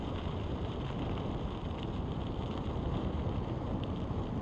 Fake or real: fake